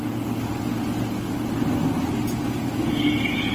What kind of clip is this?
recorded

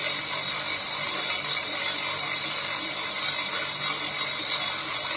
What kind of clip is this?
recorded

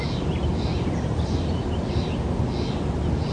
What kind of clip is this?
recorded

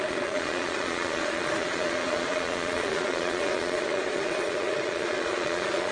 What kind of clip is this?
remade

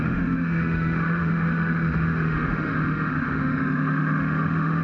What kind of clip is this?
remade